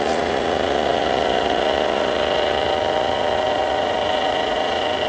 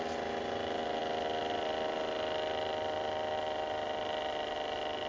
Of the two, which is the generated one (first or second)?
first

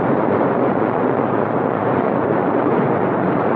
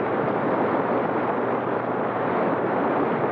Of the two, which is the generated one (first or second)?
first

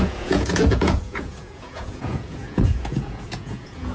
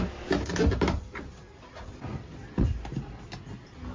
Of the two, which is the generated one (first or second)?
first